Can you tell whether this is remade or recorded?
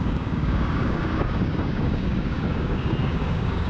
remade